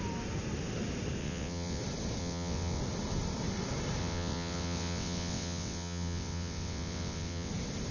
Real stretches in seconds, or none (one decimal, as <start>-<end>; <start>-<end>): 0.0-1.2; 1.8-2.2; 2.8-4.0; 7.5-7.9